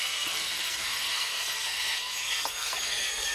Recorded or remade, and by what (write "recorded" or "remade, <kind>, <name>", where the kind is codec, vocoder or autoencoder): remade, codec, SNAC